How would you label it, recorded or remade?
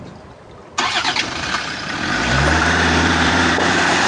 remade